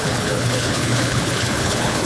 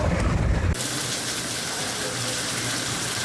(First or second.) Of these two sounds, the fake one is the first